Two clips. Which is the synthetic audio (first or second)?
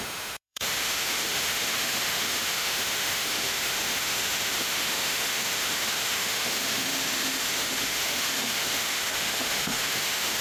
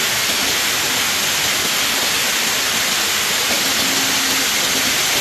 first